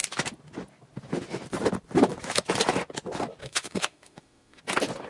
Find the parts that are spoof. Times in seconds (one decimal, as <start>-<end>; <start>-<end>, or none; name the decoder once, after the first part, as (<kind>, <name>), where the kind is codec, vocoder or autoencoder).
3.4-4.6 (autoencoder, DAC-VAE)

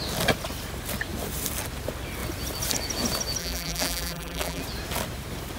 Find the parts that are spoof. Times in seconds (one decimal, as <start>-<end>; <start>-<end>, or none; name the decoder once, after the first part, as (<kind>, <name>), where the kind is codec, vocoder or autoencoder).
3.4-4.6 (vocoder, BigVGAN v2)

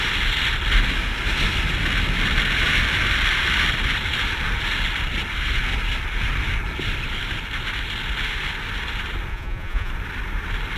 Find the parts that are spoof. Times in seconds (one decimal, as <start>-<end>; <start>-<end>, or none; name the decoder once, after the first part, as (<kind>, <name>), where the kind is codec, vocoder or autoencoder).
9.3-9.9 (vocoder, Vocos)

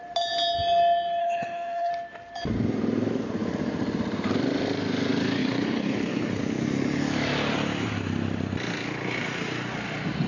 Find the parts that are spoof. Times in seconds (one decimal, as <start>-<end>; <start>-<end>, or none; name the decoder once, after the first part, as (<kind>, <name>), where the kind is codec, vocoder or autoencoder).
1.2-1.9 (codec, HILCodec); 5.4-6.4

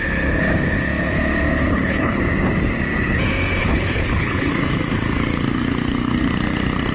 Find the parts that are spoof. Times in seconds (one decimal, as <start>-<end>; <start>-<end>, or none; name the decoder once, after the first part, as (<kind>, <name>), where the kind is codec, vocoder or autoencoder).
1.7-2.2 (codec, HILCodec); 3.6-4.5

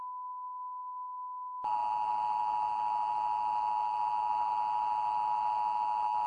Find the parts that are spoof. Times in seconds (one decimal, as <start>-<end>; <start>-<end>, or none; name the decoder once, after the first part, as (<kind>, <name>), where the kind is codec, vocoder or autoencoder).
none

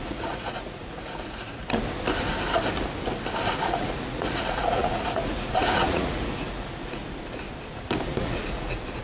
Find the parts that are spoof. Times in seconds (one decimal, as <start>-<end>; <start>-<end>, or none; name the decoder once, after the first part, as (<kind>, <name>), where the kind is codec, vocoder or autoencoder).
0.0-1.6 (vocoder, Vocos); 3.5-7.0; 8.2-9.0